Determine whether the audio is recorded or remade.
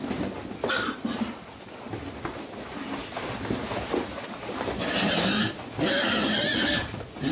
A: remade